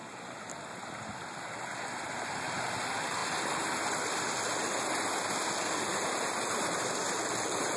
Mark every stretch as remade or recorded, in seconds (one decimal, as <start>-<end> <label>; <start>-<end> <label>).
0.0-7.8 recorded